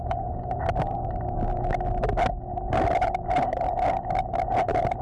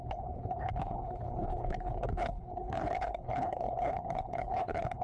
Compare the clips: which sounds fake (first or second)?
second